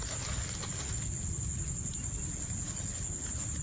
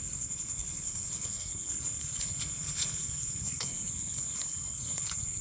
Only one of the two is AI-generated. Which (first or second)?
second